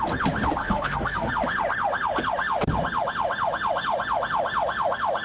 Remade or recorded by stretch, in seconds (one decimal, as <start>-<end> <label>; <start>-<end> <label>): 0.0-0.6 recorded; 0.6-1.3 remade; 1.3-5.2 recorded